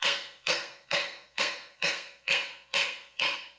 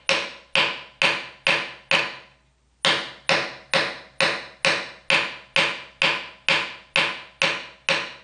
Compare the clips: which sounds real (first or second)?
second